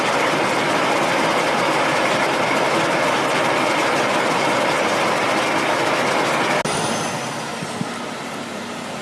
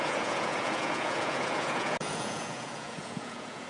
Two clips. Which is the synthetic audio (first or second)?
second